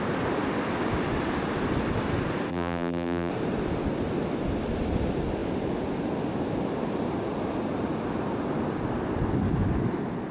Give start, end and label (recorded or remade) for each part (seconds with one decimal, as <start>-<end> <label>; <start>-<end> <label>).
0.0-2.5 recorded; 2.5-3.3 remade; 3.3-10.3 recorded